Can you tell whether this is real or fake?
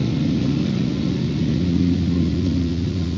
fake